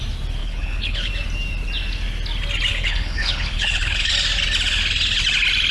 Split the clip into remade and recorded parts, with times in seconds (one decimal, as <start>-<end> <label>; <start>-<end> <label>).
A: 0.0-0.4 recorded; 0.4-1.1 remade; 1.1-2.7 recorded; 2.7-4.1 remade; 4.1-5.7 recorded